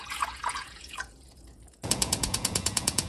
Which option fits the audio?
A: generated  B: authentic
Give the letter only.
A